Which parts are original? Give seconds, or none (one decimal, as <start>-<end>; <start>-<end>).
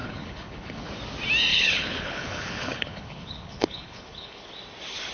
0.9-1.5; 4.5-5.1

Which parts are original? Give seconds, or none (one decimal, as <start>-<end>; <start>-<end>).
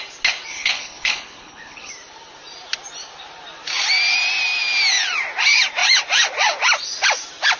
0.0-0.5; 1.9-7.6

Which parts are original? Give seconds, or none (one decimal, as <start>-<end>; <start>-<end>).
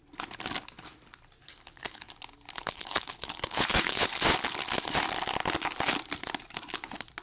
0.0-1.4; 2.1-2.6; 4.1-7.2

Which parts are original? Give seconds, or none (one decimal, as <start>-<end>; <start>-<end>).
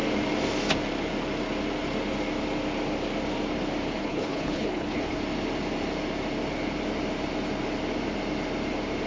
0.0-4.0; 5.2-9.1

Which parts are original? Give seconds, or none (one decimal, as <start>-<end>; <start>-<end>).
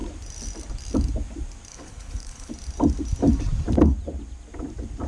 0.0-1.7; 2.5-5.1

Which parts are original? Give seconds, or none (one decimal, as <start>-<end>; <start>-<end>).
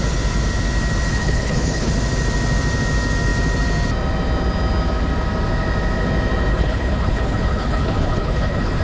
0.0-1.1; 1.9-6.5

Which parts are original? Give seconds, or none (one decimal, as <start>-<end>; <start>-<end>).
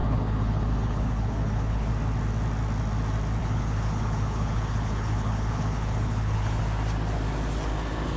1.9-3.4; 6.6-8.2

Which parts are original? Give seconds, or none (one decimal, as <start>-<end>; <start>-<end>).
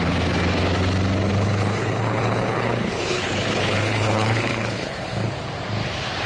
0.0-1.3; 5.1-6.3